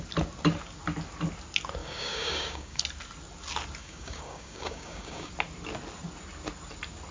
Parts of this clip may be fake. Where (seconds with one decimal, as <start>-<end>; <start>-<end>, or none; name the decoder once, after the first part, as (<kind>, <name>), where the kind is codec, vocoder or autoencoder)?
1.8-2.8 (codec, DAC); 3.8-5.3